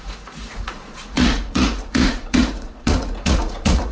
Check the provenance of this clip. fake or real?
fake